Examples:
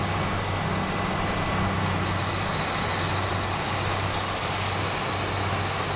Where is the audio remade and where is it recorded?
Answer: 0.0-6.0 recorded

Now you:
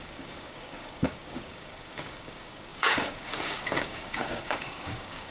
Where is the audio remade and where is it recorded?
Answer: 0.0-5.3 remade

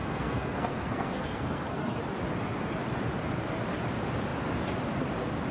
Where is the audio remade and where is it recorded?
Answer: 0.0-2.0 remade; 2.0-5.5 recorded

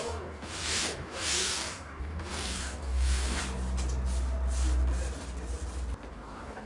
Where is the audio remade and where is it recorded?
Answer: 0.0-3.4 remade; 3.4-6.1 recorded; 6.1-6.7 remade

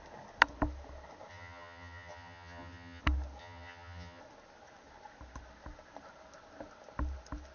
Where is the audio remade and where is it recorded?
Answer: 0.0-1.3 recorded; 1.3-3.0 remade; 3.0-3.4 recorded; 3.4-4.2 remade; 4.2-7.5 recorded

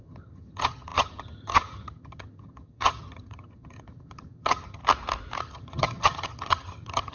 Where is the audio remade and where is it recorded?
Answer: 0.0-4.8 remade; 4.8-5.4 recorded; 5.4-7.1 remade

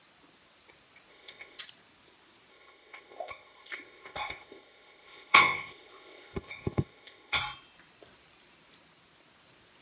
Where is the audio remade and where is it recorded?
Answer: 0.0-1.1 recorded; 1.1-1.6 remade; 1.6-2.5 recorded; 2.5-7.4 remade; 7.4-9.8 recorded

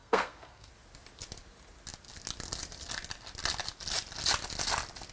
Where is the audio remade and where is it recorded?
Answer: 0.0-0.7 remade; 0.7-5.1 recorded